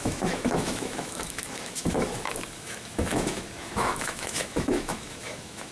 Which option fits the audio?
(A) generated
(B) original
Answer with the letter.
A